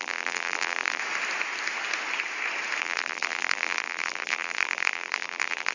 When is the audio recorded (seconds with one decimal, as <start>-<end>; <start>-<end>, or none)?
1.0-2.8